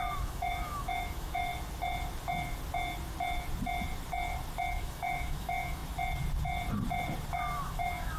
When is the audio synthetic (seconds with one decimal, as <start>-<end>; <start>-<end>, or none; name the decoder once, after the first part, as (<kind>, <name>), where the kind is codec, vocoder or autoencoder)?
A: 0.0-1.5 (autoencoder, DAC-VAE); 4.7-5.8; 7.3-8.2